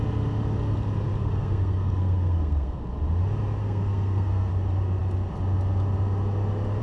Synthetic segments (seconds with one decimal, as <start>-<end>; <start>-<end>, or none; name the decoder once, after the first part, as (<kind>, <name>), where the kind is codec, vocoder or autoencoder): 1.2-2.8 (codec, SNAC); 3.6-4.5

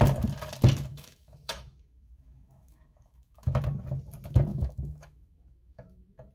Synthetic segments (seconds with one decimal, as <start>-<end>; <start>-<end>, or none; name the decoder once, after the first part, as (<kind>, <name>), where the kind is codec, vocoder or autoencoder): 0.9-3.6 (autoencoder, DAC-VAE); 4.5-6.3

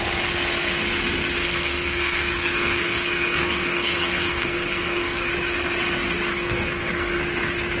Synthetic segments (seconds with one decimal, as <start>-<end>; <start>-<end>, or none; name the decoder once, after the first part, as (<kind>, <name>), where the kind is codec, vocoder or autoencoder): 1.4-5.3 (codec, SNAC); 6.3-7.2